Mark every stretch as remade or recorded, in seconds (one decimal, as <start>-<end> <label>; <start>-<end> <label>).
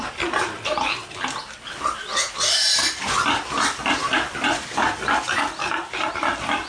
0.0-6.7 recorded